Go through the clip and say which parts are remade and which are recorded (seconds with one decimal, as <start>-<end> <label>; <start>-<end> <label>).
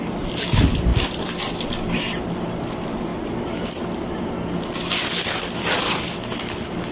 0.0-3.1 remade; 3.1-3.8 recorded; 3.8-6.9 remade